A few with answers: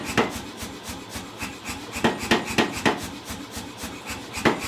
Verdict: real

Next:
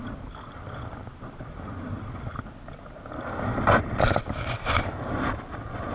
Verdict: real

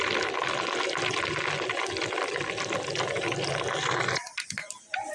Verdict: real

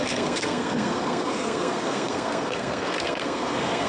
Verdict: fake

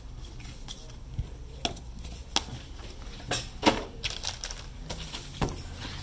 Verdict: real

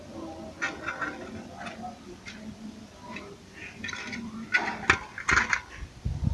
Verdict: real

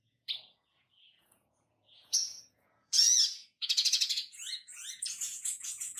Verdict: fake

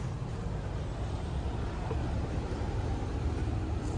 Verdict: fake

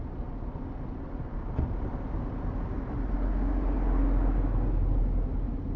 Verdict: real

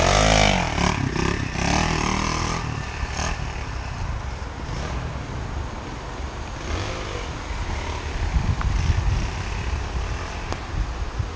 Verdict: real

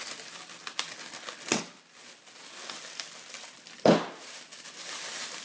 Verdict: real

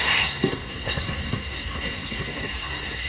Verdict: fake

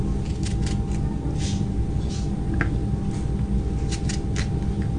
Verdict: real